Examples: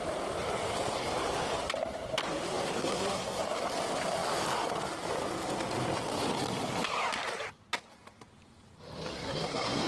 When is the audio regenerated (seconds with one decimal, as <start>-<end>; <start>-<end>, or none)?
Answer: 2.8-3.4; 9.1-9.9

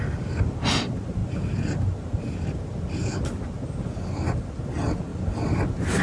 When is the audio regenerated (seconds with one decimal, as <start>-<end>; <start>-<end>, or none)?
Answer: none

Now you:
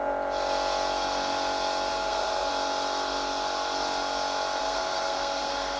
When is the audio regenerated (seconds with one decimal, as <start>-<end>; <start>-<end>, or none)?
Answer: 1.9-2.5; 4.6-5.8